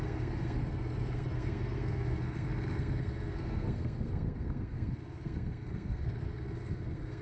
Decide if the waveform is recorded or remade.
remade